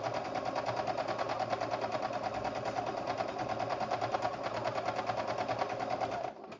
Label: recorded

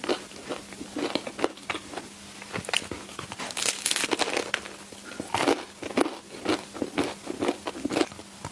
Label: recorded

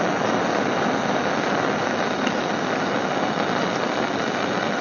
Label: recorded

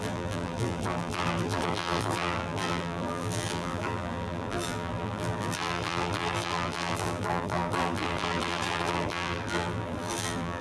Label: remade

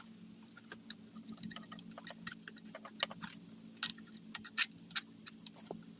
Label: recorded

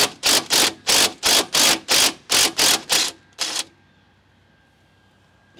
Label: recorded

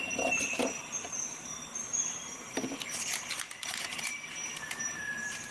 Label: remade